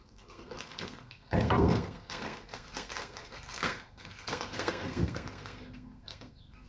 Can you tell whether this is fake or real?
fake